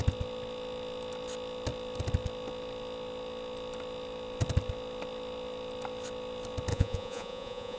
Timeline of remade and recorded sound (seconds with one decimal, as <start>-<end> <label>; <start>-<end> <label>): 0.0-6.7 recorded; 6.7-7.8 remade